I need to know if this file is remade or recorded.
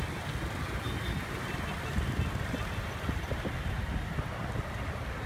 recorded